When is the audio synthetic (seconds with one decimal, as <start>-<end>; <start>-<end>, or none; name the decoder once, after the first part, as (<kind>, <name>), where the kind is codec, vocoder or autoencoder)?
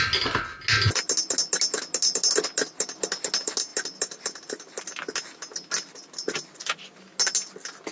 none